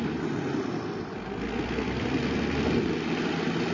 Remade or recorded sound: recorded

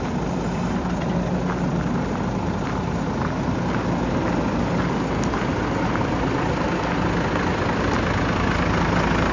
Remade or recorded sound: recorded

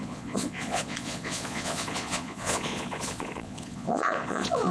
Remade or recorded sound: remade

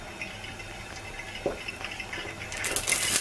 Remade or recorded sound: recorded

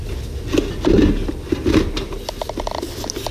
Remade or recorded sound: recorded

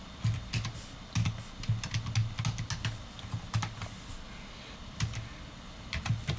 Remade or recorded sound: recorded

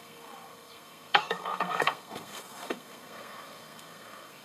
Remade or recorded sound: remade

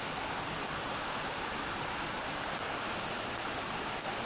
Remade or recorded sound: recorded